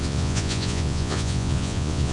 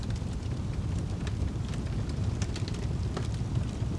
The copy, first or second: first